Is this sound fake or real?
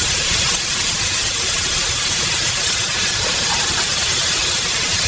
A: real